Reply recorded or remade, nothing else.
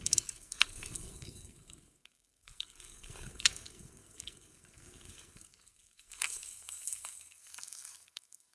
remade